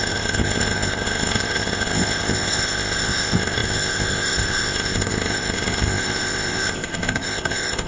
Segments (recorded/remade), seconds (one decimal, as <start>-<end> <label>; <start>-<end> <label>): 0.0-7.9 remade